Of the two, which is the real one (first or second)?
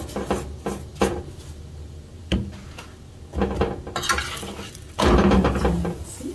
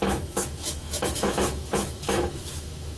first